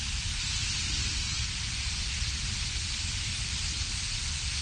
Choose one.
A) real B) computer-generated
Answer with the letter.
A